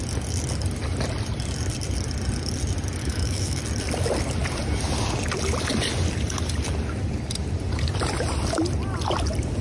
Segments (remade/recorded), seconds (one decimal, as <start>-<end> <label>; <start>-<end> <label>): 0.0-3.0 recorded; 3.0-3.6 remade; 3.6-9.6 recorded